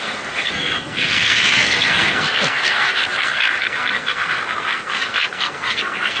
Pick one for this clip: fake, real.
fake